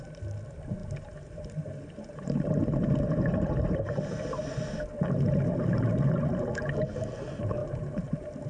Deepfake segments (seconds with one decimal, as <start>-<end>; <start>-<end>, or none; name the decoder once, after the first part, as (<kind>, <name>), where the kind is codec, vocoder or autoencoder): 0.8-4.0 (vocoder, BigVGAN v2); 7.6-8.5